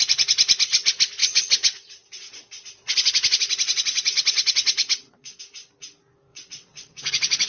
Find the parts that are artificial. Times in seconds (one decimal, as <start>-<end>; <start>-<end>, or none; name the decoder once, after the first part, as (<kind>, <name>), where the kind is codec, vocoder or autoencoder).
1.2-5.4 (vocoder, WaveNeXt); 6.3-7.5